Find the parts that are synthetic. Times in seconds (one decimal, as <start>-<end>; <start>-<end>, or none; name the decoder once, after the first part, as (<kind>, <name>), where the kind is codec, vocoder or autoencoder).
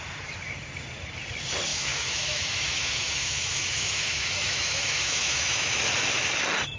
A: 1.7-5.8 (autoencoder, DAC-VAE)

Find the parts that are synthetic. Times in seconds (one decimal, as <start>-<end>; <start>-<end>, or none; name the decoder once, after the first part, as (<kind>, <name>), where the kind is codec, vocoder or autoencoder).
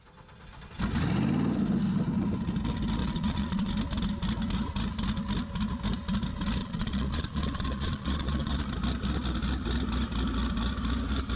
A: 3.0-3.7 (vocoder, Vocos); 6.6-8.7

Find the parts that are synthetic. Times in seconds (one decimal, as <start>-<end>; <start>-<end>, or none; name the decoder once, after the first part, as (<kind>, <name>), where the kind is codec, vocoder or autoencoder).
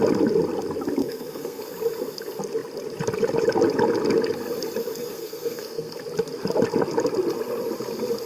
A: 1.0-1.6 (codec, SNAC); 5.0-6.0